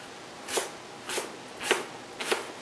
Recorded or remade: recorded